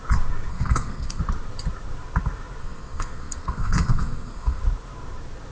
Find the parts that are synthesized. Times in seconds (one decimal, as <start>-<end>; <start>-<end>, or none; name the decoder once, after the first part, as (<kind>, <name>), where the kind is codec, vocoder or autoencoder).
0.5-1.2 (codec, SNAC); 2.6-4.6